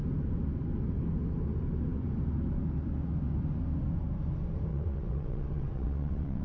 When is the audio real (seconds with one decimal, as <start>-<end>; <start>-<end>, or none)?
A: 0.0-4.7